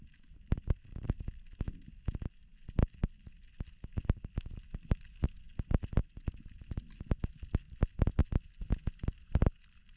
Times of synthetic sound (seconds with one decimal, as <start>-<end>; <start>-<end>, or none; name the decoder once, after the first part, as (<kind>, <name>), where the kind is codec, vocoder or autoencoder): none